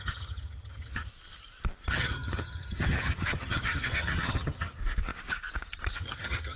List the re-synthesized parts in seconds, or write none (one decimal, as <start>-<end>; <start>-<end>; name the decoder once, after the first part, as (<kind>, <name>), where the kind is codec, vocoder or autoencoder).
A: 0.0-1.1 (vocoder, HiFi-GAN); 1.9-4.8; 6.0-6.6